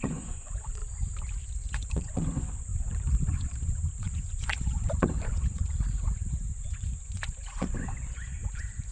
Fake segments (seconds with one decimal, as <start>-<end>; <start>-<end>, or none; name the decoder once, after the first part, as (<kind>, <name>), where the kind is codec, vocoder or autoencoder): 0.0-0.8 (vocoder, Vocos); 1.7-8.9